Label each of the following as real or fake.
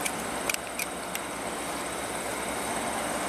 real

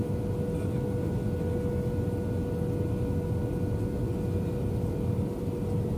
real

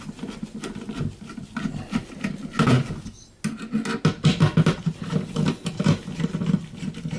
real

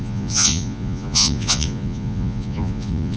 fake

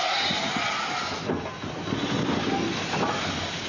real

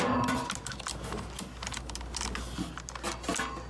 real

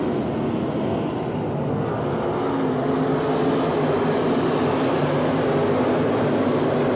real